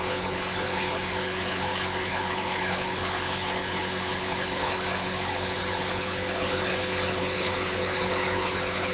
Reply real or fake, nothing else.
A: fake